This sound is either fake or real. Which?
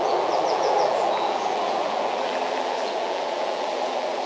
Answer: fake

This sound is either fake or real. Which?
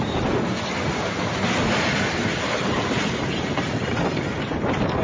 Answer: fake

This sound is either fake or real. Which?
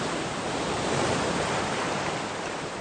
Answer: fake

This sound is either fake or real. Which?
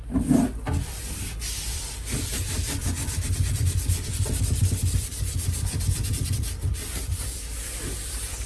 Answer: fake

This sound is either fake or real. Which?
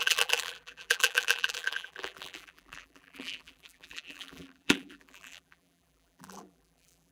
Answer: fake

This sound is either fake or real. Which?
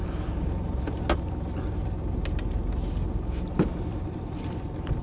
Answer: real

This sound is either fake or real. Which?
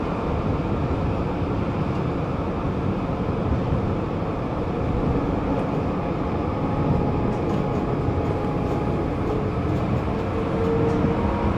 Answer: real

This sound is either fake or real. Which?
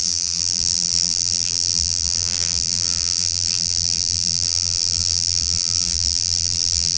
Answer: fake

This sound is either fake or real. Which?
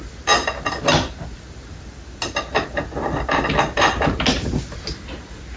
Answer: real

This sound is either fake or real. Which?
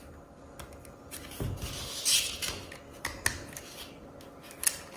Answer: real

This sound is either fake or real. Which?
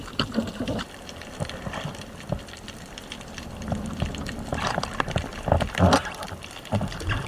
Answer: fake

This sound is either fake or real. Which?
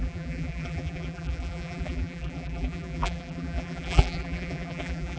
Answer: fake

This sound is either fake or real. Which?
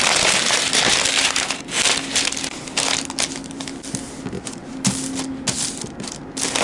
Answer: real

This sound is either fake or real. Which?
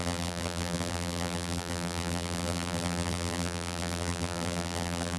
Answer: fake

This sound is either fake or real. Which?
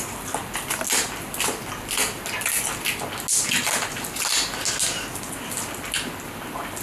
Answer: real